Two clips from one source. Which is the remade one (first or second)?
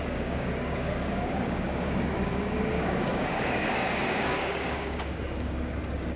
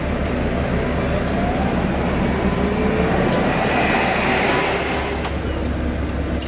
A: first